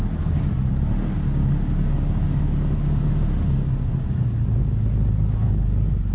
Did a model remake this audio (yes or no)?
no